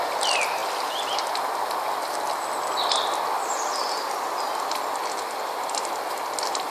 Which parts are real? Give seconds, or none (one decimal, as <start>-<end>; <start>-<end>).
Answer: 0.0-6.7